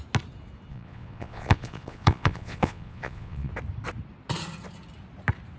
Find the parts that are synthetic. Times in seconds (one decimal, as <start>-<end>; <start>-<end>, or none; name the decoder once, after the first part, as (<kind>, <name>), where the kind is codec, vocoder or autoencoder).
0.7-3.5 (vocoder, Vocos)